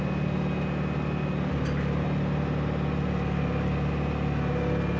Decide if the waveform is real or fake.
real